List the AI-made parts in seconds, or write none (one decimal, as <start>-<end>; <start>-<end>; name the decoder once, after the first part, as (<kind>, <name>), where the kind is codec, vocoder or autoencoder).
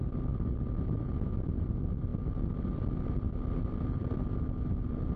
none